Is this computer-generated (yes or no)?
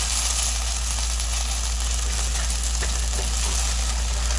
no